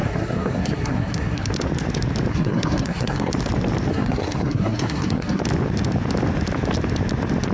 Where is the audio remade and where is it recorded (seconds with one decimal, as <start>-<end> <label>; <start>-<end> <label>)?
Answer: 0.0-1.5 remade; 1.5-2.3 recorded; 2.3-3.3 remade; 3.3-3.9 recorded; 3.9-5.4 remade; 5.4-7.5 recorded